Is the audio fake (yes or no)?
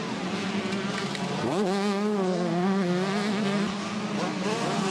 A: no